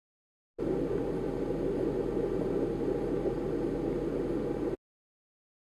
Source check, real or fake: real